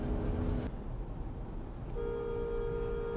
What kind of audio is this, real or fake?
real